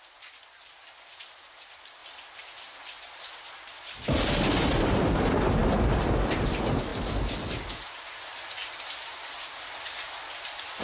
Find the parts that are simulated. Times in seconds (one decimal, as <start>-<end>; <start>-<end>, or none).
2.0-4.3; 6.9-7.5; 8.6-10.0